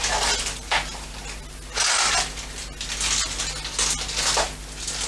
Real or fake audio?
real